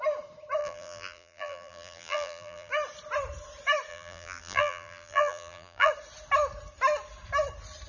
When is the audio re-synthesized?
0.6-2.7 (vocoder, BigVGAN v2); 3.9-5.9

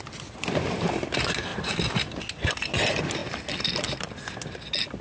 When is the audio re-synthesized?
none

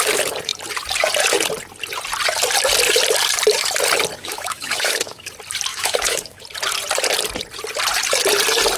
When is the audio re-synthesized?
4.2-5.3 (autoencoder, DAC-VAE); 5.7-6.4

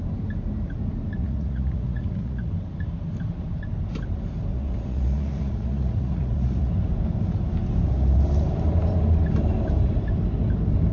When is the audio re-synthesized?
1.2-2.5 (vocoder, Vocos); 4.5-6.7

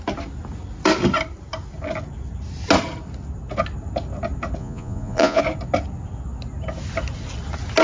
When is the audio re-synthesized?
4.6-5.4 (vocoder, Vocos)

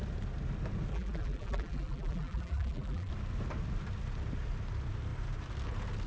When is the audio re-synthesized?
0.9-3.1 (vocoder, BigVGAN v2)